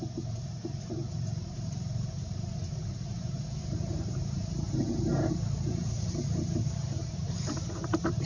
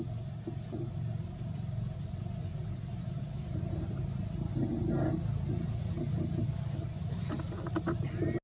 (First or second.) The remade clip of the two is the first